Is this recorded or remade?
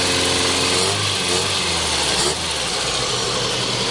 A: recorded